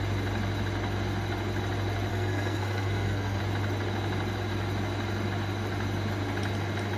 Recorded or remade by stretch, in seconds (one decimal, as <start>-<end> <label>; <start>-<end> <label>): 0.0-2.1 recorded; 2.1-3.4 remade; 3.4-7.0 recorded